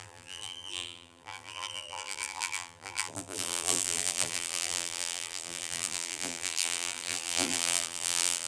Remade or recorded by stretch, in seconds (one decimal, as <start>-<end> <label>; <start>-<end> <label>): 0.0-8.5 remade